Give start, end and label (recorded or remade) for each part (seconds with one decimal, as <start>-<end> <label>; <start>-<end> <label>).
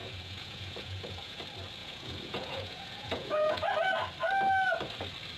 0.0-1.4 remade; 1.4-1.8 recorded; 1.8-3.7 remade; 3.7-5.4 recorded